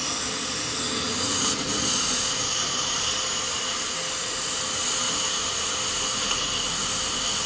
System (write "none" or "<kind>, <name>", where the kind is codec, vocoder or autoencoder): none